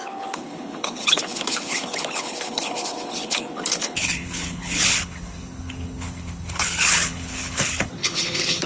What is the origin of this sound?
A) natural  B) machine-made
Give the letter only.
B